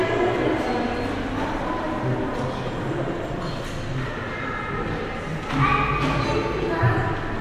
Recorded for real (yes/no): yes